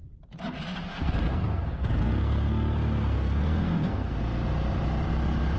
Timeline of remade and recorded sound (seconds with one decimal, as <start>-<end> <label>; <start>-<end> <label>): 0.0-0.8 recorded; 0.8-4.2 remade; 4.2-5.6 recorded